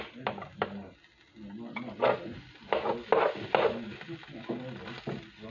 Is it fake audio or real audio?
real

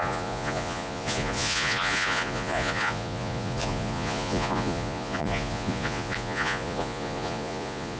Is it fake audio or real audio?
fake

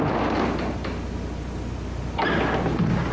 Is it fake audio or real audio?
real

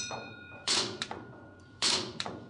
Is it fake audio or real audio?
fake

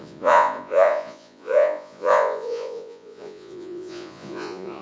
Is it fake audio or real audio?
fake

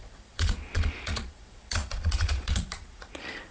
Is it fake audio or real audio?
fake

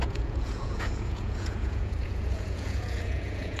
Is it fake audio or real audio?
fake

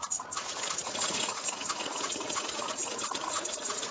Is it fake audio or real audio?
fake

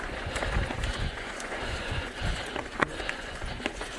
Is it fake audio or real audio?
fake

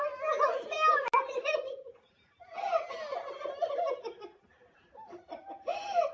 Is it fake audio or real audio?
real